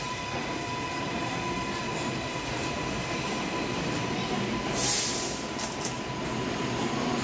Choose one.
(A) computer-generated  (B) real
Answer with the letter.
B